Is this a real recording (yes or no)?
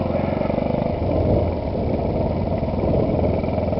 yes